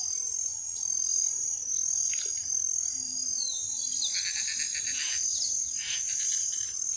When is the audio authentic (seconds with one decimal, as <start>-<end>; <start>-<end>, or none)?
0.0-7.0